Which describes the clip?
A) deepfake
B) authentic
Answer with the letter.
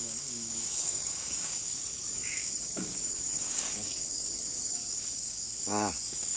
A